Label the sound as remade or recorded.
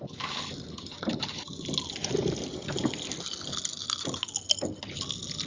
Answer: recorded